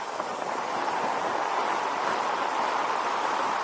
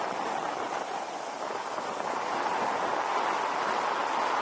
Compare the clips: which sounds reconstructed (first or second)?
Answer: first